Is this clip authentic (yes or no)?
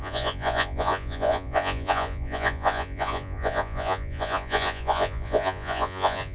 no